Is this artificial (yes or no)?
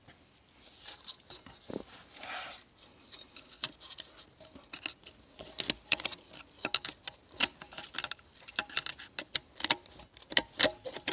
no